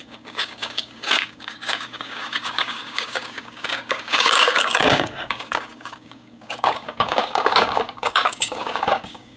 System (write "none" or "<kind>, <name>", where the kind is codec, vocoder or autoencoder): codec, DAC